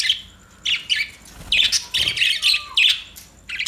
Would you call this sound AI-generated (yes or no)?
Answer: no